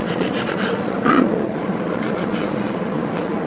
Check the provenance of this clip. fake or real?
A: fake